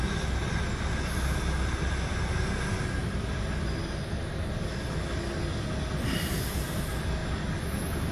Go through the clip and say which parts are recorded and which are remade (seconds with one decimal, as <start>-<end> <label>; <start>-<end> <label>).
0.0-8.1 recorded